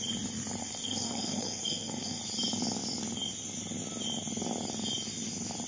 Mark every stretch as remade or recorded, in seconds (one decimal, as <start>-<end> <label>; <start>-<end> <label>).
0.0-0.6 recorded; 0.6-2.2 remade; 2.2-5.7 recorded